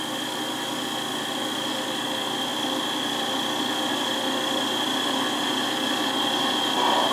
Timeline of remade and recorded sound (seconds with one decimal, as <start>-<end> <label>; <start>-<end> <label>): 0.0-7.1 recorded